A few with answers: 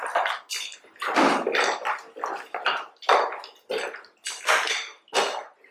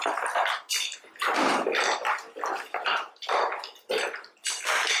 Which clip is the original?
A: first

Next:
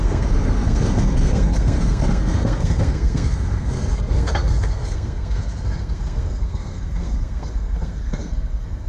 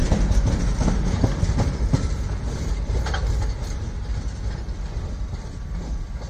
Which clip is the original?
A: second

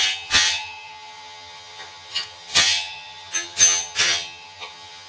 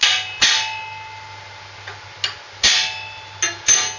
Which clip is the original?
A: second